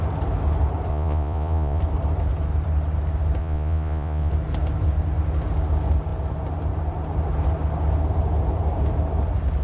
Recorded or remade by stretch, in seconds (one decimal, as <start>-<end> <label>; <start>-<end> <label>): 0.0-0.9 recorded; 0.9-1.8 remade; 1.8-3.4 recorded; 3.4-4.3 remade; 4.3-9.6 recorded